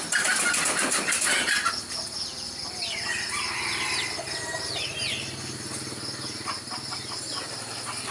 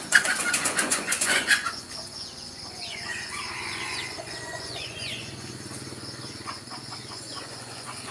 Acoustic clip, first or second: first